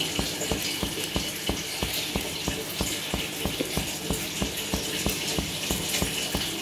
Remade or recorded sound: recorded